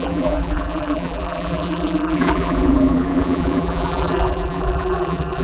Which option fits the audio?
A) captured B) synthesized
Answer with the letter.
B